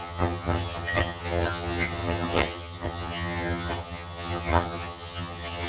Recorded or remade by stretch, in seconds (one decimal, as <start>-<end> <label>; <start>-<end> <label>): 0.0-5.7 remade